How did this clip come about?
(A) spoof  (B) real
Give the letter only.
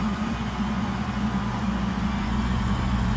A